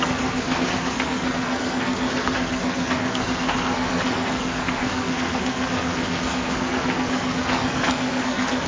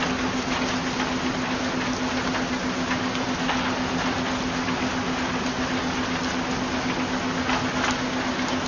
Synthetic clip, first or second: first